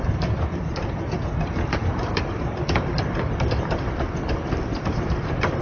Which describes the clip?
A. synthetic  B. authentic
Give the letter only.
A